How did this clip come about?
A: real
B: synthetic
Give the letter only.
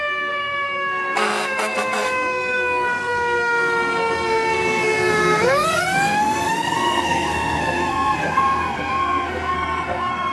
B